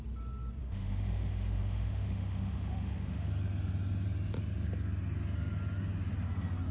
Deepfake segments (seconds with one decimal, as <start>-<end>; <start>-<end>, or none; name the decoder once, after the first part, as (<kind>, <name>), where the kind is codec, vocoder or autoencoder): 0.6-3.3 (autoencoder, DAC-VAE)